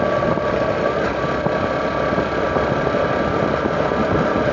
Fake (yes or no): no